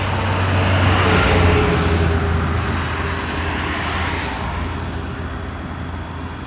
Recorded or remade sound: recorded